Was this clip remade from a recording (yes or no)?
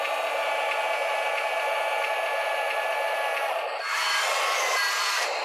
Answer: no